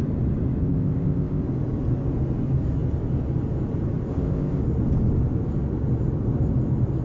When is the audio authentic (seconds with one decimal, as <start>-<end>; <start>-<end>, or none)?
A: 0.0-0.6; 1.4-4.1; 4.6-7.0